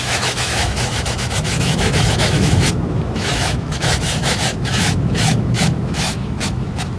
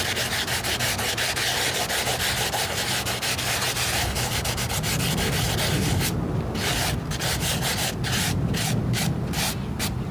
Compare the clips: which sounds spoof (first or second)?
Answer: first